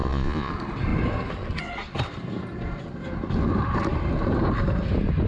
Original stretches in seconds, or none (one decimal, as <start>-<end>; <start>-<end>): 0.5-5.3